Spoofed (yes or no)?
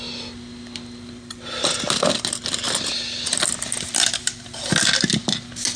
no